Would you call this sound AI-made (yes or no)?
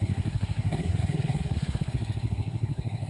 yes